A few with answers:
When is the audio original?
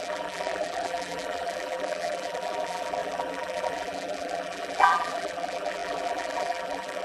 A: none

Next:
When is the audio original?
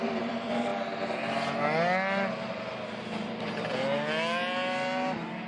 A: 0.7-2.3; 3.7-5.5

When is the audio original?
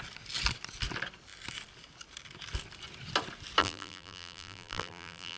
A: 0.0-3.6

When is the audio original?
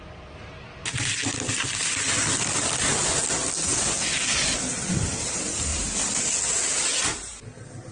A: 0.0-7.9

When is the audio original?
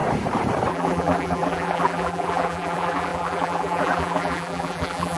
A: 0.0-0.7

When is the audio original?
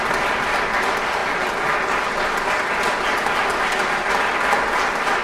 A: 0.0-5.2